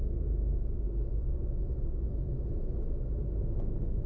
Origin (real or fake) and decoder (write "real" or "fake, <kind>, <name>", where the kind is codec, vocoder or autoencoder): real